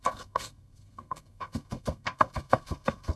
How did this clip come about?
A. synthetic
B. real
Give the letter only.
A